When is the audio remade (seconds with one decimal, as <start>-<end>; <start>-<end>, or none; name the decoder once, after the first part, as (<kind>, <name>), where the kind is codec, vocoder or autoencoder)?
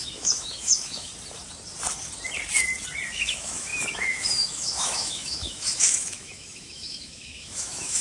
0.0-1.1 (autoencoder, DAC-VAE); 3.1-8.0